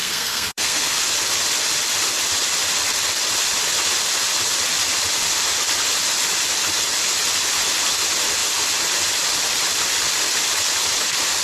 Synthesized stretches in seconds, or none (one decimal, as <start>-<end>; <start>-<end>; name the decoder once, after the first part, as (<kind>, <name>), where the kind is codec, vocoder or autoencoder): 0.0-1.0 (codec, SNAC)